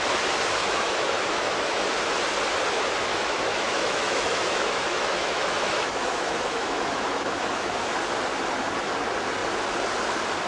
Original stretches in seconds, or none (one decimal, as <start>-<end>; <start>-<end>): 0.0-0.6; 1.8-3.1; 7.8-10.5